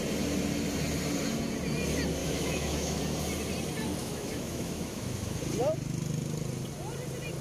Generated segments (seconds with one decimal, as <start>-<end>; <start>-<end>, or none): 2.2-3.0; 4.0-5.4